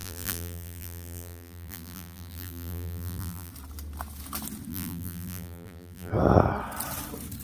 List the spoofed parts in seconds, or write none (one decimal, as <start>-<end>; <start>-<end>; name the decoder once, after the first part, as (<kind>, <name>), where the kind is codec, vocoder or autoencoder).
0.0-3.5 (vocoder, BigVGAN v2); 4.7-6.1